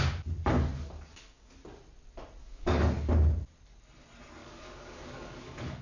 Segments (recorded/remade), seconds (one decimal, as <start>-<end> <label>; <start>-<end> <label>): 0.0-0.7 recorded; 0.7-1.5 remade; 1.5-2.4 recorded; 2.4-2.9 remade; 2.9-4.4 recorded; 4.4-5.8 remade